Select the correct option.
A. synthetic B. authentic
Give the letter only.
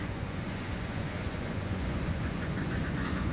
A